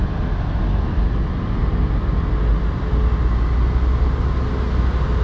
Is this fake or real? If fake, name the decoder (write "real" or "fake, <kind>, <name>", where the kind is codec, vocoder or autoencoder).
real